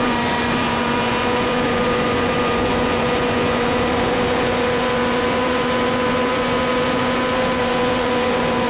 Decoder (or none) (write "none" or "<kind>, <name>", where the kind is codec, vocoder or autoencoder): vocoder, Vocos